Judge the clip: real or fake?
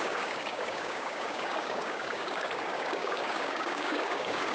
fake